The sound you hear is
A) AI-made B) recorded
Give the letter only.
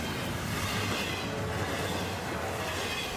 B